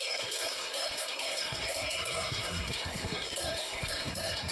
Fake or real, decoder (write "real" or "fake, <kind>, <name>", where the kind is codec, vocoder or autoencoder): fake, codec, SNAC